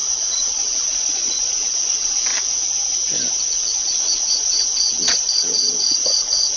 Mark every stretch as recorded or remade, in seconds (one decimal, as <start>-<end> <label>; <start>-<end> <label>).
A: 0.0-2.3 remade; 2.3-3.5 recorded; 3.5-6.6 remade